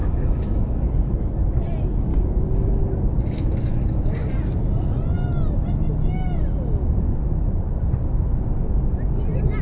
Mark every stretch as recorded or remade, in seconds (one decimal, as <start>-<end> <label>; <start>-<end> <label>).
0.0-1.5 remade; 1.5-9.6 recorded